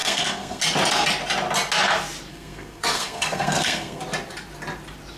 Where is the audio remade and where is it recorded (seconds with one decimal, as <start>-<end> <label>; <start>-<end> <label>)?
0.0-0.6 remade; 0.6-2.3 recorded; 2.3-4.0 remade; 4.0-5.2 recorded